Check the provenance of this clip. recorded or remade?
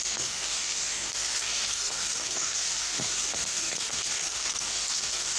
remade